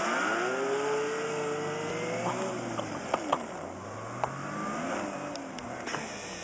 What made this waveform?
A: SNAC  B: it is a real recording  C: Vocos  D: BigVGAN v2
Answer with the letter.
B